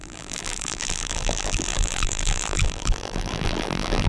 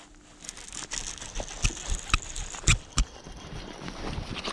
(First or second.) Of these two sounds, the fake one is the first